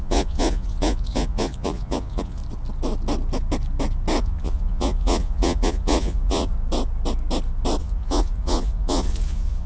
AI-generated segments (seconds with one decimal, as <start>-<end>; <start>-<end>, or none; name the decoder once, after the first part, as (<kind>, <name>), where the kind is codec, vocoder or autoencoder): 0.0-2.4 (vocoder, Vocos); 4.2-6.5; 7.8-9.7